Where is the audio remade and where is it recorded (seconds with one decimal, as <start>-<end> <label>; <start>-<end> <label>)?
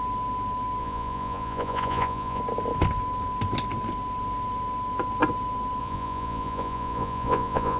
0.0-0.8 recorded; 0.8-2.4 remade; 2.4-5.8 recorded; 5.8-7.8 remade